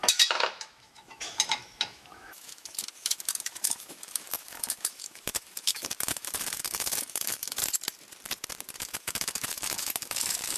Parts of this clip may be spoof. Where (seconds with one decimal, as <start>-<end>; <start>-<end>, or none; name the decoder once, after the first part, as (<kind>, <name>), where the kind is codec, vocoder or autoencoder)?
0.0-7.6 (autoencoder, DAC-VAE); 8.8-10.6